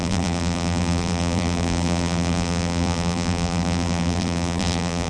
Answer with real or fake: fake